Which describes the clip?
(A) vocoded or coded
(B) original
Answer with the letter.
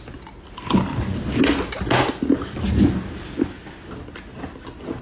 B